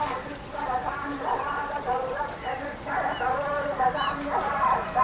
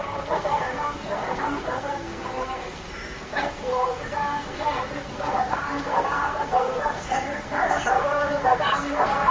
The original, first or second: first